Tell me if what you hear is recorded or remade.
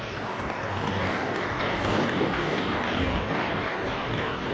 remade